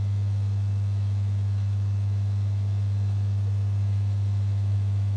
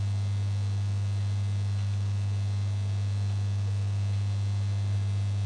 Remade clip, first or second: first